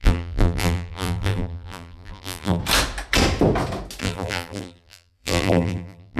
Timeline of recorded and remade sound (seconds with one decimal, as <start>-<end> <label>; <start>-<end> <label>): 0.0-2.6 remade; 2.6-4.0 recorded; 4.0-6.2 remade